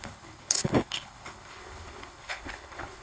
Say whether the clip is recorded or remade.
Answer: remade